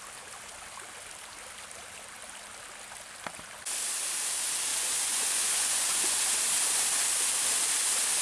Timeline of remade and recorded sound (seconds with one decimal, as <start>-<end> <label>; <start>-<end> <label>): 0.0-4.7 recorded; 4.7-6.2 remade; 6.2-8.2 recorded